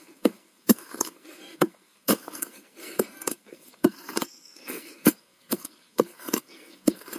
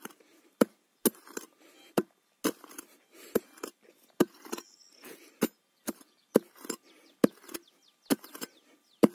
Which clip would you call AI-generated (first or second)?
first